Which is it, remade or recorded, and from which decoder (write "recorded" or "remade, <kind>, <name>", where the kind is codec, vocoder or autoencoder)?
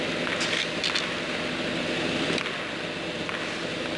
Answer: recorded